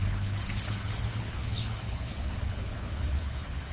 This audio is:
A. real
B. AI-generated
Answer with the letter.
B